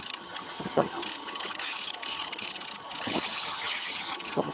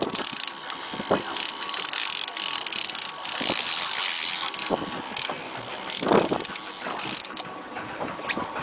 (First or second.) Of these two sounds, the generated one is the first